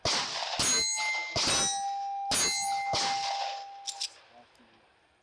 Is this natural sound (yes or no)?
yes